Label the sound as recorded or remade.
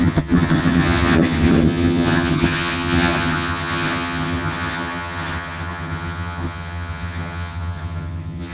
remade